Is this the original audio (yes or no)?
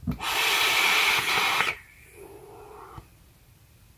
yes